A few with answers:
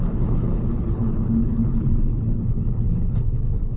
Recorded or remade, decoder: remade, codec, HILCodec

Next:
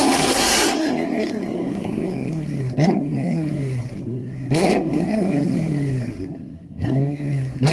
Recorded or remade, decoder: remade, codec, SNAC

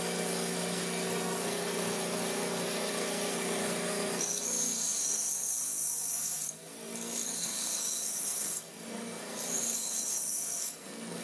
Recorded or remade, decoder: remade, codec, SNAC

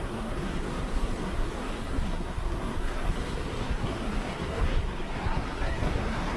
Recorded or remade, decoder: remade, codec, SNAC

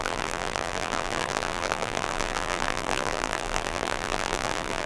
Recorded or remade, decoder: remade, vocoder, BigVGAN v2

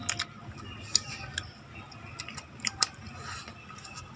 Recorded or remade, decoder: recorded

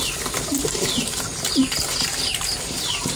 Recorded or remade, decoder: recorded